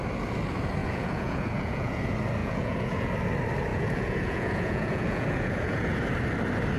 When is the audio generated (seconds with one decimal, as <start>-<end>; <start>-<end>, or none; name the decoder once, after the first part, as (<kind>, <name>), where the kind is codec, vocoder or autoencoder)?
0.8-2.0 (vocoder, Vocos); 2.4-3.1; 3.7-6.0